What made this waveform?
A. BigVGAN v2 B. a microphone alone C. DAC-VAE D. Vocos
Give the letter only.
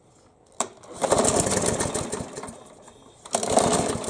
A